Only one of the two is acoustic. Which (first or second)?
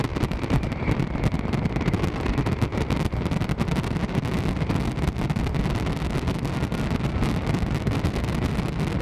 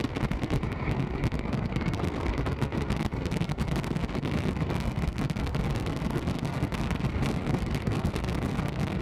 first